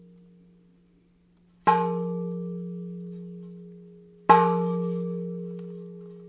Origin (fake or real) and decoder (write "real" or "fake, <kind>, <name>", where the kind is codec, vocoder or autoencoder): real